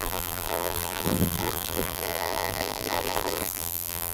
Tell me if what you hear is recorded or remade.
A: remade